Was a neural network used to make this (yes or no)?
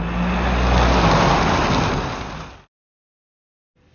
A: no